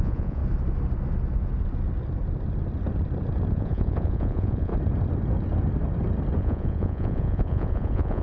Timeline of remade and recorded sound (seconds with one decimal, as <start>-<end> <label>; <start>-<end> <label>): 0.0-0.4 remade; 0.4-3.5 recorded; 3.5-4.7 remade; 4.7-6.4 recorded; 6.4-8.2 remade